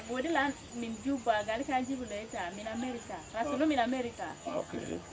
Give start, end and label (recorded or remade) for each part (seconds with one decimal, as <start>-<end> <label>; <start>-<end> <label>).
0.0-4.3 recorded; 4.3-5.1 remade